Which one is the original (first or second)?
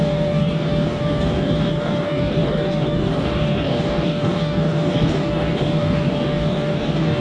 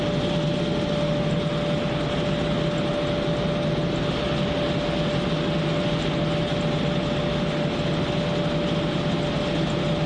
second